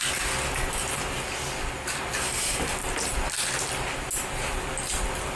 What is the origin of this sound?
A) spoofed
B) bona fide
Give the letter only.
B